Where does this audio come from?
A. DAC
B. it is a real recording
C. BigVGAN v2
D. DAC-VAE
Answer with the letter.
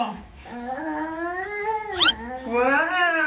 D